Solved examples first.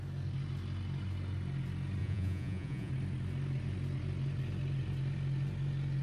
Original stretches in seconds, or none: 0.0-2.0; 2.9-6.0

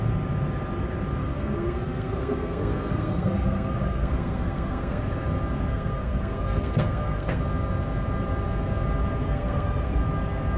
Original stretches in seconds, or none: 0.0-1.2; 5.0-5.7; 7.4-9.2; 10.0-10.6

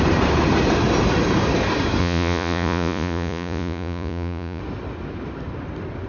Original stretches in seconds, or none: 0.0-2.0; 4.6-6.1

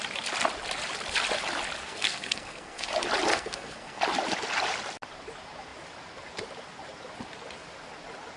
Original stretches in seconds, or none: 0.0-1.8; 2.9-3.3; 4.0-8.4

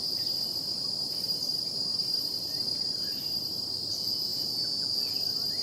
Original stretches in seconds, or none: 0.0-1.9; 2.5-3.1; 3.7-5.6